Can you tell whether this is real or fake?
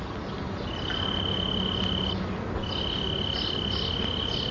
real